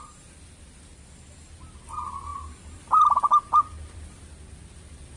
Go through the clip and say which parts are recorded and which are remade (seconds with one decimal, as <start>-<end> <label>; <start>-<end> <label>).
0.0-2.3 recorded; 2.3-4.2 remade; 4.2-5.2 recorded